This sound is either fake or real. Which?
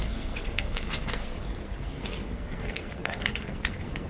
fake